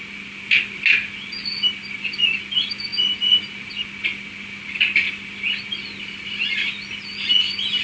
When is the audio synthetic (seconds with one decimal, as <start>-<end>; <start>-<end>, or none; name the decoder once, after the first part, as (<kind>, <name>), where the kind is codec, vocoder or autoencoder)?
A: none